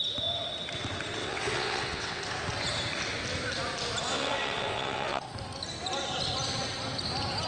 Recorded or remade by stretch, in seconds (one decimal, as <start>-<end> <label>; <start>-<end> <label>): 0.0-1.2 recorded; 1.2-2.2 remade; 2.2-4.1 recorded; 4.1-5.2 remade; 5.2-7.5 recorded